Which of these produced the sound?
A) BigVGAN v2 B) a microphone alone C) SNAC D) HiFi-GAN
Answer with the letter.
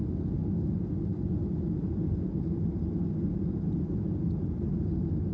B